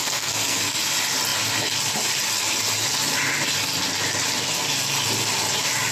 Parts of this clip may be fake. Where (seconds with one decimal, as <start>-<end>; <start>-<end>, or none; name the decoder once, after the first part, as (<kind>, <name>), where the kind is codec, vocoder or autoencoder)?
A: 0.0-0.8 (codec, SNAC)